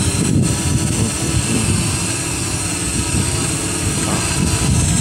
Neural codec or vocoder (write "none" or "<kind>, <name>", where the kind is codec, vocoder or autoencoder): none